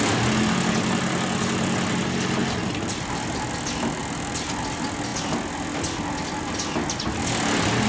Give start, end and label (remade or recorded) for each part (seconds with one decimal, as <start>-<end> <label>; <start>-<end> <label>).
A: 0.0-7.9 recorded